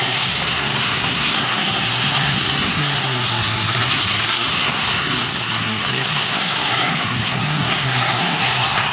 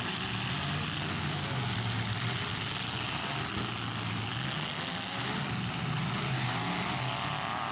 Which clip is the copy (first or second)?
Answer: first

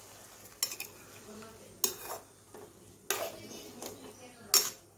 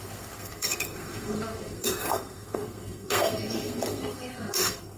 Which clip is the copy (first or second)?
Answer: second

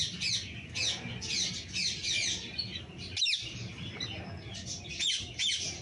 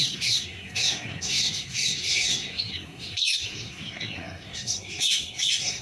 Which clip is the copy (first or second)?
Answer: second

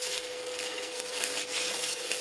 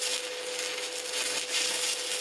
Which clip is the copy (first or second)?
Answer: first